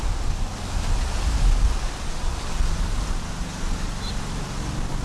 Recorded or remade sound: recorded